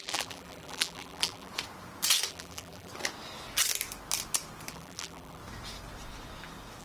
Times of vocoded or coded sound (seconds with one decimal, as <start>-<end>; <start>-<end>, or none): 0.0-1.5; 2.3-2.9; 4.7-5.4